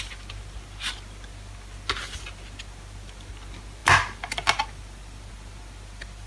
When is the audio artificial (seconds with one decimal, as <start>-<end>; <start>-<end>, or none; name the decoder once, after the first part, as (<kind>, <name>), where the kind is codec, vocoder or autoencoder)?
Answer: none

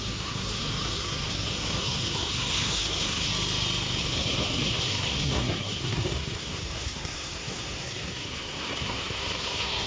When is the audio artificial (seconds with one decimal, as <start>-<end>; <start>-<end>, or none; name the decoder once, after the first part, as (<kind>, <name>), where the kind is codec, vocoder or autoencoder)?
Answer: 0.0-3.3 (codec, SNAC); 4.0-9.9